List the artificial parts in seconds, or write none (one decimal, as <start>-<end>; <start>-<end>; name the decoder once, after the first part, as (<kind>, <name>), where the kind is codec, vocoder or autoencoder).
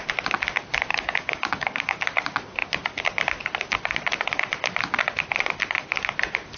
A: 0.9-2.0 (codec, DAC)